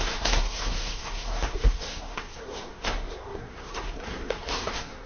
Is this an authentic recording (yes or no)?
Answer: no